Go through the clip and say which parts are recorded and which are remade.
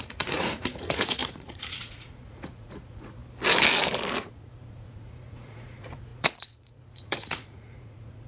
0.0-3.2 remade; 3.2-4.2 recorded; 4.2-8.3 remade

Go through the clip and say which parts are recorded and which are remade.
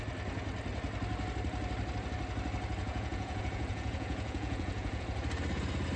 0.0-2.8 recorded; 2.8-5.0 remade; 5.0-6.0 recorded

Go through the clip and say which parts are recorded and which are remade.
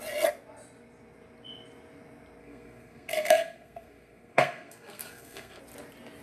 0.0-2.4 recorded; 2.4-5.6 remade; 5.6-6.2 recorded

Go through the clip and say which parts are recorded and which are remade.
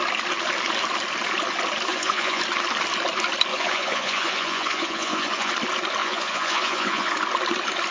0.0-1.9 recorded; 1.9-2.4 remade; 2.4-3.5 recorded; 3.5-5.5 remade; 5.5-6.0 recorded; 6.0-7.1 remade; 7.1-7.9 recorded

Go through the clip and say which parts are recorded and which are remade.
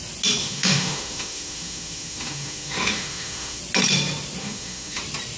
0.0-0.4 recorded; 0.4-3.6 remade; 3.6-4.4 recorded; 4.4-5.0 remade; 5.0-5.4 recorded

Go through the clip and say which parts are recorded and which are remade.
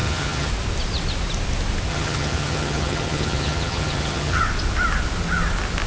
0.0-0.5 remade; 0.5-1.9 recorded; 1.9-4.4 remade; 4.4-5.9 recorded